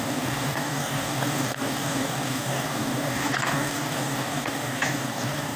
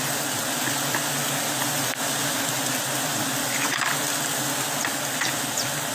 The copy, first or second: first